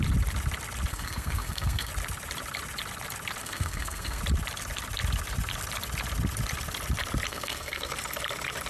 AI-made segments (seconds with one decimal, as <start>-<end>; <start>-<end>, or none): 0.9-1.9; 3.4-4.2; 7.3-7.9